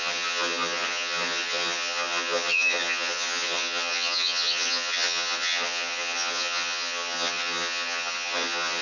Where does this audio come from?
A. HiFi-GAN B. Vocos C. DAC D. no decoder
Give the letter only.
A